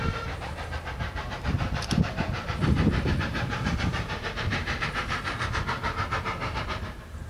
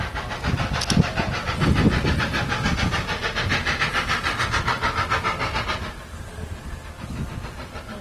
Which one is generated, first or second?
first